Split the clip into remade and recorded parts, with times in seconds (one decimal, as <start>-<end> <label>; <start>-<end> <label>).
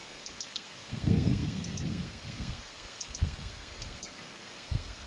0.0-5.1 remade